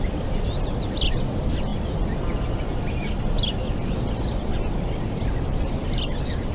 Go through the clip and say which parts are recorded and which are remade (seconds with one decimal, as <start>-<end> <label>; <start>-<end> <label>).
0.0-6.5 recorded